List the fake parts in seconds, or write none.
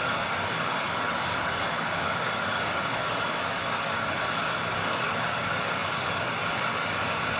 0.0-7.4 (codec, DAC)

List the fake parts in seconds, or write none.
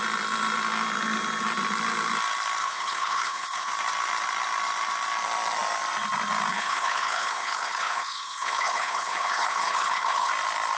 2.6-3.7 (codec, HILCodec); 6.5-10.3